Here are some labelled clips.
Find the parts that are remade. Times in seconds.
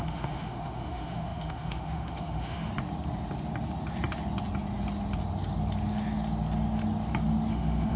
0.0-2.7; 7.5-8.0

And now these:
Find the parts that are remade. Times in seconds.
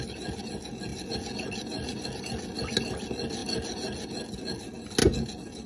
none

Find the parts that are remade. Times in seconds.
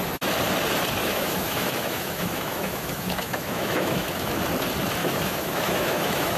1.0-4.4; 5.0-6.4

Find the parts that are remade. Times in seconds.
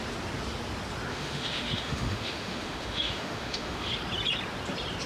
1.1-3.9